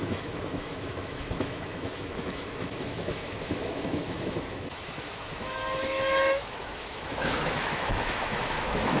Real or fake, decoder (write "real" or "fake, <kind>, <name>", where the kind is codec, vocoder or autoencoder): fake, autoencoder, DAC-VAE